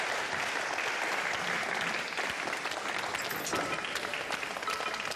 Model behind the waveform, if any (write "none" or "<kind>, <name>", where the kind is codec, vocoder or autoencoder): none